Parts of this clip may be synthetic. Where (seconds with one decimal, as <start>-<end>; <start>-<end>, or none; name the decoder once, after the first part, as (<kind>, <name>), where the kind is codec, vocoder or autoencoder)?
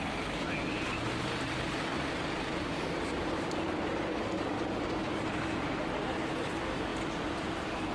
1.1-5.8 (vocoder, BigVGAN v2); 6.9-7.9